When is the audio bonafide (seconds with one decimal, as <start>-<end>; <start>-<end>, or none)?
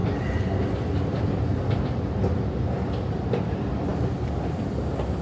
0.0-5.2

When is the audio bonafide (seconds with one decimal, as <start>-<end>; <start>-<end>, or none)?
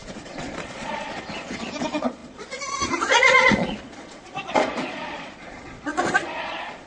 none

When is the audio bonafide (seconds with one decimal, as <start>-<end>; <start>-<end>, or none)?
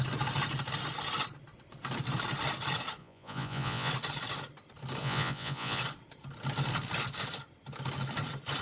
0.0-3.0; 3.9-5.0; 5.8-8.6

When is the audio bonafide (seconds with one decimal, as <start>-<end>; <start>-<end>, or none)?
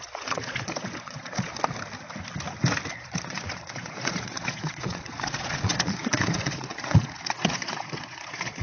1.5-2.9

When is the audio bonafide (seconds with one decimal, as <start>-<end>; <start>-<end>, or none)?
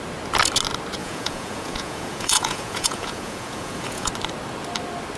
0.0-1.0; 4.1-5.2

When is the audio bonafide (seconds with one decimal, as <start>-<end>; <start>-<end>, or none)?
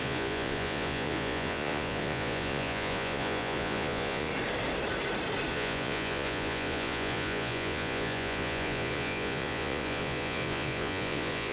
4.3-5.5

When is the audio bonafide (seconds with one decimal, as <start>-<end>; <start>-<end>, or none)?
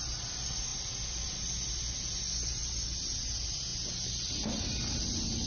0.0-5.5